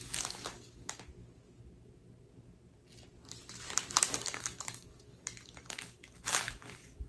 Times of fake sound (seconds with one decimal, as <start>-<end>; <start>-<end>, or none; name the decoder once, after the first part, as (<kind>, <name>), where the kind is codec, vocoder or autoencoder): 0.0-1.1 (codec, DAC); 4.0-7.1